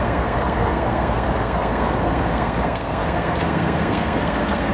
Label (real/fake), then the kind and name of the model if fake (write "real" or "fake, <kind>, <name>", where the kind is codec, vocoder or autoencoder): fake, codec, SNAC